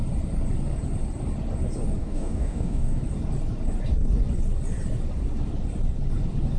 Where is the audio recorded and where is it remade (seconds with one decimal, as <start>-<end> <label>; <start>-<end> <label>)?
0.0-2.0 recorded; 2.0-3.0 remade; 3.0-6.6 recorded